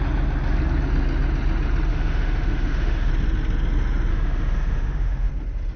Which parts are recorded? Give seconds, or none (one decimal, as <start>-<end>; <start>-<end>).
0.0-1.9; 3.1-4.1; 5.3-5.8